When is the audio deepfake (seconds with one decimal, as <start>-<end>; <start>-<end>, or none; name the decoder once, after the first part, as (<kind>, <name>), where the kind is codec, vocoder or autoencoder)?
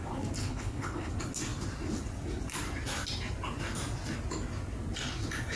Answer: 0.4-1.1 (codec, HILCodec)